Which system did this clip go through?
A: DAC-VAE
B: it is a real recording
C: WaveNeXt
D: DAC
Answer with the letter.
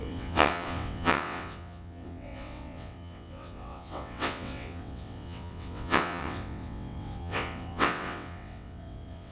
C